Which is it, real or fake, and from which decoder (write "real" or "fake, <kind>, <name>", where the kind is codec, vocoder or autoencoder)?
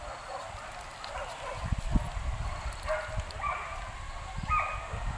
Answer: real